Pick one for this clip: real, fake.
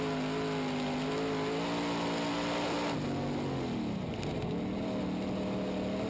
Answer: real